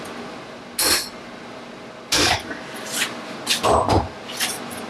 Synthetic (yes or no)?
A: no